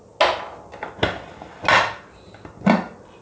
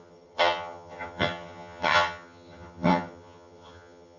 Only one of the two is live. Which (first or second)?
first